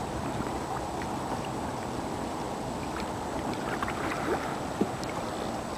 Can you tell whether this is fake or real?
real